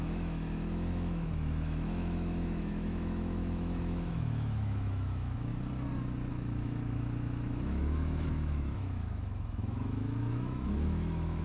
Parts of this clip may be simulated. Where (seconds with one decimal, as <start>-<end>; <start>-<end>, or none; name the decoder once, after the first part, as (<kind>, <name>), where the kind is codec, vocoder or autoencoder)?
0.0-5.5 (autoencoder, DAC-VAE); 6.3-11.4